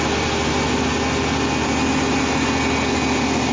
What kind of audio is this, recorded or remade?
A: recorded